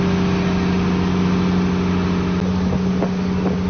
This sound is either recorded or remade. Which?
recorded